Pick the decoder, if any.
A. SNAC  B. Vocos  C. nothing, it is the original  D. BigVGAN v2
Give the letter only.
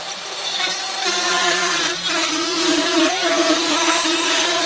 C